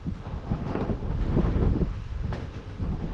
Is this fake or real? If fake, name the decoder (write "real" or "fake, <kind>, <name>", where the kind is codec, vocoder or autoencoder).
fake, autoencoder, DAC-VAE